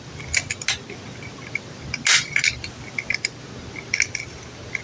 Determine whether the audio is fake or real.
real